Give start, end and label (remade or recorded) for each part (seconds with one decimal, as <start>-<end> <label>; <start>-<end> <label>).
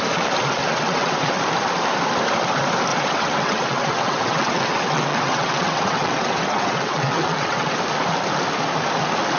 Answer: 0.0-0.6 recorded; 0.6-1.4 remade; 1.4-2.9 recorded; 2.9-7.8 remade; 7.8-9.4 recorded